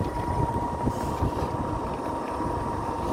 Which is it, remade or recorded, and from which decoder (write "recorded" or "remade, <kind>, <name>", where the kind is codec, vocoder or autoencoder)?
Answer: recorded